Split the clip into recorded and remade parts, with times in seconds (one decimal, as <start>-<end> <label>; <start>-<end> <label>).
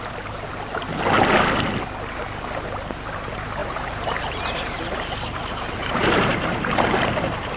0.0-3.6 recorded; 3.6-7.6 remade